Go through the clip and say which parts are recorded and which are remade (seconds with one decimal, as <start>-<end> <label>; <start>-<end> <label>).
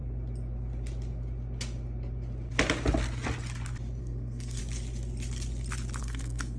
0.0-4.0 recorded; 4.0-4.6 remade; 4.6-6.0 recorded; 6.0-6.6 remade